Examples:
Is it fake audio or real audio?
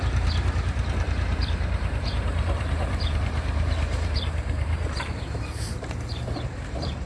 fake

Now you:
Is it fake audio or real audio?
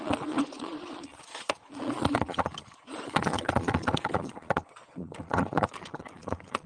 fake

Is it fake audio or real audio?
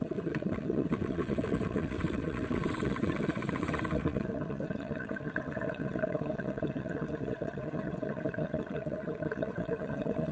fake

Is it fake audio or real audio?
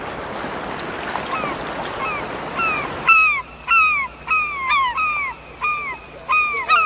real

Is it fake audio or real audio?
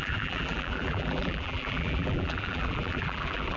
fake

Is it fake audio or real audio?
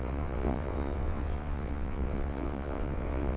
fake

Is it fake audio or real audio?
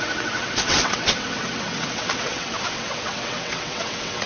fake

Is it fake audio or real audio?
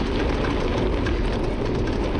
real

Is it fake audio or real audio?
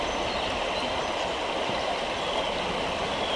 real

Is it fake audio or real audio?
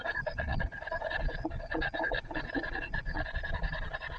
fake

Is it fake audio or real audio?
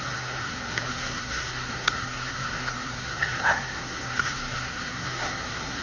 fake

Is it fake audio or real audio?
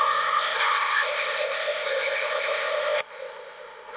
fake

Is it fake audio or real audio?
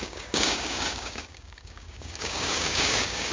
fake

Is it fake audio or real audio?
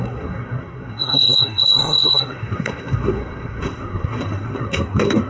fake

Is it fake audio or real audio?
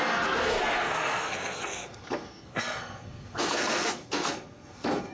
fake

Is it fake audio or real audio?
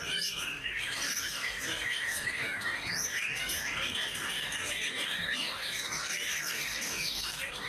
fake